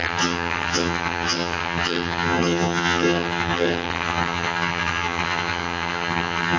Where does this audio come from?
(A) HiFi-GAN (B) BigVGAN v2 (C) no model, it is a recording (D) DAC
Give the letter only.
A